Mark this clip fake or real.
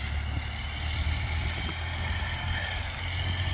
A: real